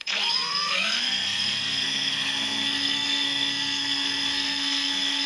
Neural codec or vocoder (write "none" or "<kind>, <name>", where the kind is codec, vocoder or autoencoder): codec, SNAC